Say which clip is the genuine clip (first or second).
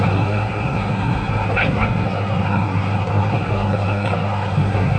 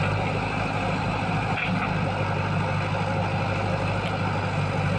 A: second